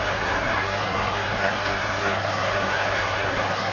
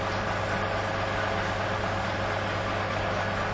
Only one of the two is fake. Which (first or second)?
first